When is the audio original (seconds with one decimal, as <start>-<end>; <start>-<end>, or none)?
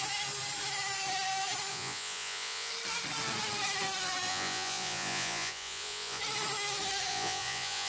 0.0-1.7; 2.7-4.3; 6.2-7.1